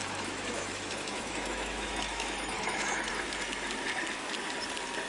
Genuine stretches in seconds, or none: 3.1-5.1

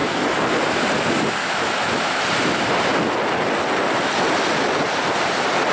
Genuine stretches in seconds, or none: 0.0-1.4; 2.2-5.7

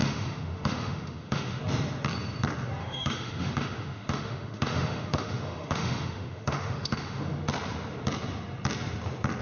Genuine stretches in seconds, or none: 1.6-2.8; 7.2-9.4

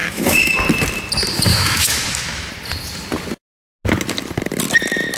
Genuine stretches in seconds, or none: 0.6-1.5; 2.5-5.2

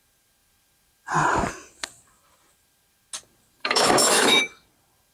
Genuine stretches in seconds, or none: 0.0-3.6; 4.4-5.1

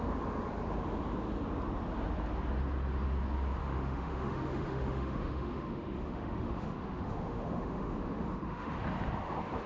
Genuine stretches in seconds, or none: 0.0-3.6; 8.8-9.7